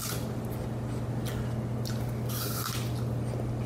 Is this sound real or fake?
real